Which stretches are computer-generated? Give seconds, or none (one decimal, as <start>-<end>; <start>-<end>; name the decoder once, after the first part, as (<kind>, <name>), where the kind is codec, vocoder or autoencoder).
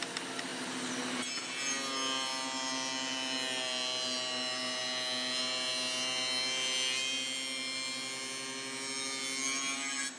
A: none